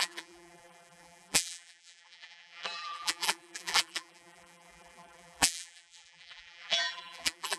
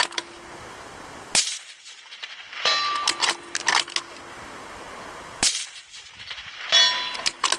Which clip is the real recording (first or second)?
second